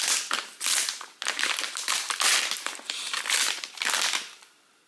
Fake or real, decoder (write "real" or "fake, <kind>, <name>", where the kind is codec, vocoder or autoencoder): real